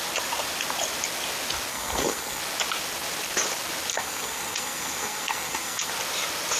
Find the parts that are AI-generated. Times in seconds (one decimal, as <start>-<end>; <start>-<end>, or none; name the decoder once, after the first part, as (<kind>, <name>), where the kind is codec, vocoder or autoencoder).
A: 1.7-2.4 (codec, SNAC); 3.9-5.9